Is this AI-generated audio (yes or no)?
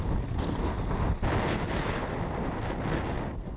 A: no